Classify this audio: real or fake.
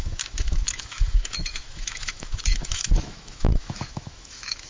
fake